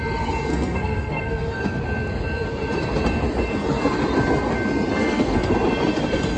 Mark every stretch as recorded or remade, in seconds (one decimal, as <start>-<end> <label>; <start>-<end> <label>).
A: 0.0-0.5 recorded; 0.5-1.8 remade; 1.8-5.0 recorded; 5.0-5.5 remade; 5.5-6.4 recorded